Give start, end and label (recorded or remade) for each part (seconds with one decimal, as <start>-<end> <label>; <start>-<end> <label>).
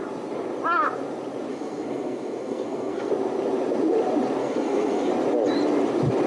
0.0-1.5 recorded; 1.5-3.1 remade; 3.1-4.4 recorded; 4.4-5.1 remade; 5.1-6.3 recorded